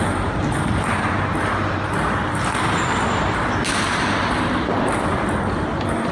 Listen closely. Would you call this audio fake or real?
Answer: real